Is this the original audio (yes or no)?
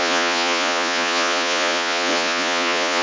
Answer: no